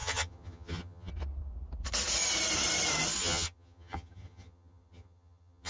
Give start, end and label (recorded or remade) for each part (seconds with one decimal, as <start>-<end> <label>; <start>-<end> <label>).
0.0-1.1 remade; 1.1-3.2 recorded; 3.2-5.7 remade

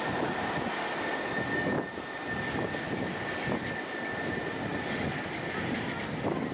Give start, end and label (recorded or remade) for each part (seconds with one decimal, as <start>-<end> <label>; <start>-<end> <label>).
0.0-6.5 recorded